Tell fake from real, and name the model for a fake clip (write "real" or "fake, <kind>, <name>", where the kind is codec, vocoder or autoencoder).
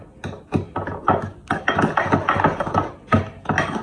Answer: real